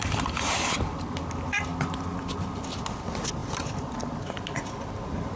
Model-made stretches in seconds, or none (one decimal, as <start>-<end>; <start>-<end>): none